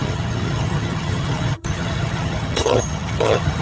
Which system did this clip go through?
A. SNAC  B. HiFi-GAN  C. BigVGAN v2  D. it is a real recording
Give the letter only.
B